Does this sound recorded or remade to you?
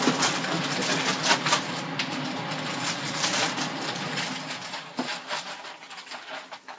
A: recorded